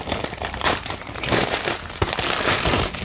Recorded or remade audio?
remade